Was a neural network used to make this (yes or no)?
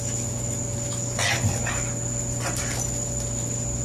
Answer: no